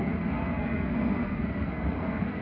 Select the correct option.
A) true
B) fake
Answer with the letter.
B